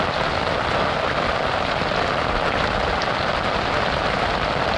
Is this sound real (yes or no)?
yes